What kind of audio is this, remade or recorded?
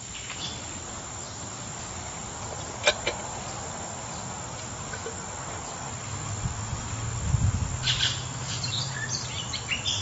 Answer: recorded